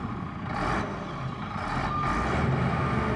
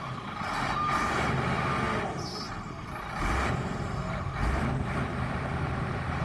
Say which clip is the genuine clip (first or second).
first